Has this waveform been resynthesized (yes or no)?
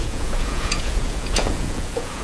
yes